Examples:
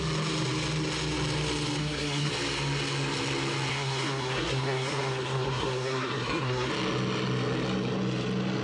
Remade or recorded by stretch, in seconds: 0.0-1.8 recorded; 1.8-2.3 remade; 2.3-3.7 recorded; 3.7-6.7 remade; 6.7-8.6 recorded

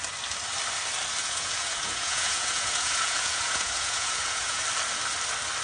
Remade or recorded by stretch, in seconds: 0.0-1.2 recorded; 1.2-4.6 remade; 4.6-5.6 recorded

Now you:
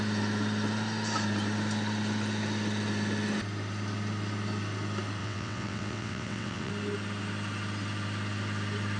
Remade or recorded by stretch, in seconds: 0.0-5.2 recorded; 5.2-6.7 remade; 6.7-9.0 recorded